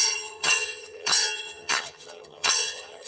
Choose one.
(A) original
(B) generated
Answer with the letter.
B